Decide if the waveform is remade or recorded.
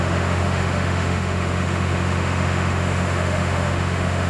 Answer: remade